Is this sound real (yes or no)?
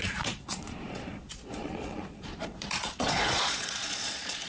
no